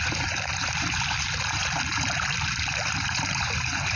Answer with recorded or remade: remade